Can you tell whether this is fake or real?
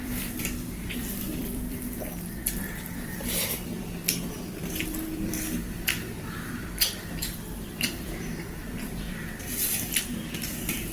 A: fake